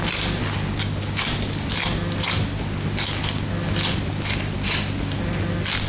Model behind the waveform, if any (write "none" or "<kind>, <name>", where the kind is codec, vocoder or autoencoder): none